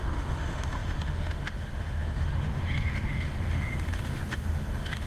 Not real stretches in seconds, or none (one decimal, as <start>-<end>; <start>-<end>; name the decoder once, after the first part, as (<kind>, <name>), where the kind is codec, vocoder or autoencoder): 0.0-5.1 (autoencoder, DAC-VAE)

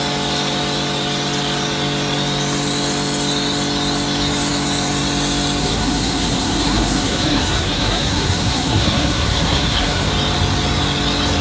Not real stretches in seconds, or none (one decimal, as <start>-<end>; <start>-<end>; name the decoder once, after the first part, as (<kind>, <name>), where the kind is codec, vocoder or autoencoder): 5.6-10.1 (codec, SNAC)

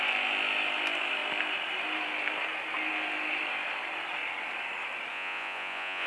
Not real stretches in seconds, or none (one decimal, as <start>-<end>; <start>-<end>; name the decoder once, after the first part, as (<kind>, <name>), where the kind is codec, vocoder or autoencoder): 5.1-6.1 (vocoder, Vocos)

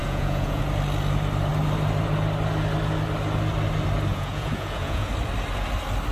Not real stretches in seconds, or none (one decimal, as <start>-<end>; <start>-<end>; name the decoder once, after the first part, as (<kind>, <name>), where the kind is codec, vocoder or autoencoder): 0.0-0.6 (vocoder, Vocos); 4.1-5.1

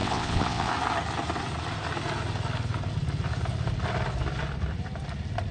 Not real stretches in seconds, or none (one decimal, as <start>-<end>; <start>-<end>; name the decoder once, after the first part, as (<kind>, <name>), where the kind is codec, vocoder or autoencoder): 0.0-0.7 (vocoder, WaveNeXt)

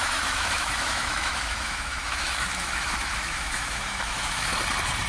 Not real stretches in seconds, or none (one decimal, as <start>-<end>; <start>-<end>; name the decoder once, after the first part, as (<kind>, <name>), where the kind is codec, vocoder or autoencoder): 0.0-4.5 (autoencoder, DAC-VAE)

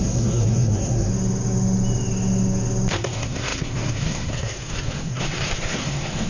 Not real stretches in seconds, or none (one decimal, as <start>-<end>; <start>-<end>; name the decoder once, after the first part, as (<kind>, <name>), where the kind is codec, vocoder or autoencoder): 0.0-1.1 (codec, SNAC); 2.9-6.3